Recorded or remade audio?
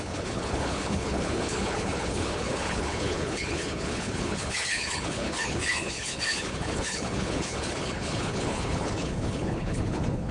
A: remade